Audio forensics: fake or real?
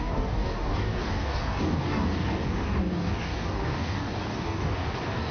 fake